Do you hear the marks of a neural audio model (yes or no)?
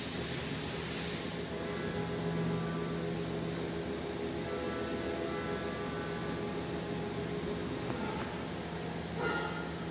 no